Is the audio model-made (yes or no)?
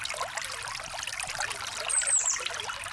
no